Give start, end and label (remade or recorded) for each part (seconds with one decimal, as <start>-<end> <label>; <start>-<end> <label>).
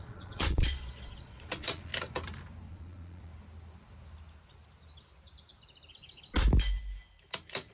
0.0-1.9 remade; 1.9-2.7 recorded; 2.7-3.3 remade; 3.3-7.7 recorded